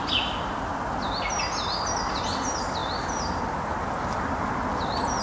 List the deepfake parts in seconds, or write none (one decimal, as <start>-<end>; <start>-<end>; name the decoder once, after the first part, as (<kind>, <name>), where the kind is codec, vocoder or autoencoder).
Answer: none